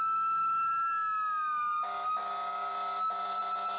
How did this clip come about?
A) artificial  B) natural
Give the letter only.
B